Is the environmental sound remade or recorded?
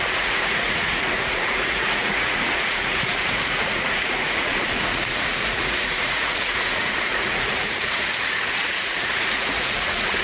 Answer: remade